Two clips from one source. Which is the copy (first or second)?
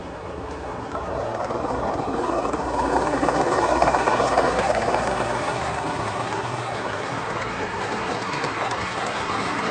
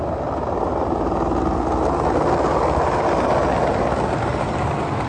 first